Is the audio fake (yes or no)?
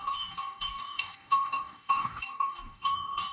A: yes